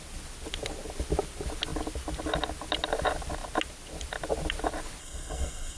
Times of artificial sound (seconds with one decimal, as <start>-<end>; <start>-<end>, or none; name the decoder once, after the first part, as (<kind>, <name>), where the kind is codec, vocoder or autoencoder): 5.0-5.8 (codec, SNAC)